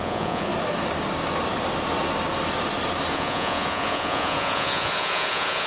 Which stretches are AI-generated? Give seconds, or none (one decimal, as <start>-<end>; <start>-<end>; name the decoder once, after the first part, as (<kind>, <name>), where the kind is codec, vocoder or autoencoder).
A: 0.0-0.5 (vocoder, Vocos); 3.1-5.7